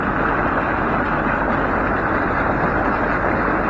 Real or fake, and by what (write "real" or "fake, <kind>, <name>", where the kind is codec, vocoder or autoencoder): real